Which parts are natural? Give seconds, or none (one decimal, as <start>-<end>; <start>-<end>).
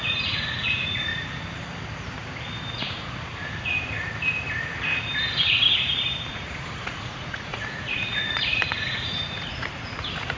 1.1-2.7; 3.3-6.3